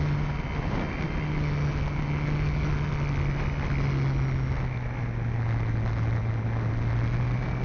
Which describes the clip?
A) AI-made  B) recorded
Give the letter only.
B